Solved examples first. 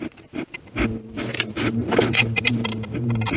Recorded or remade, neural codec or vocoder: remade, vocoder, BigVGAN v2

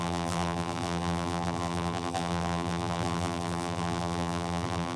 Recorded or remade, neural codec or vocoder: remade, vocoder, BigVGAN v2